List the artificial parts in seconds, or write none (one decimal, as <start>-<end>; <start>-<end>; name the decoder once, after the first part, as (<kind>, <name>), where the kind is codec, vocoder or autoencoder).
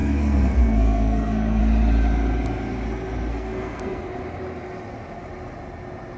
0.0-1.6 (codec, SNAC); 3.3-4.0